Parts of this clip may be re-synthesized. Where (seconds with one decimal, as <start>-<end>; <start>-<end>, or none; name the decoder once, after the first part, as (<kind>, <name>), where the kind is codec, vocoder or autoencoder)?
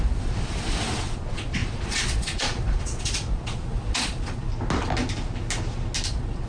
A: 0.0-4.5 (vocoder, Vocos); 6.1-6.5